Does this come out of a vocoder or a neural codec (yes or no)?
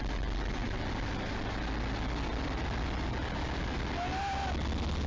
no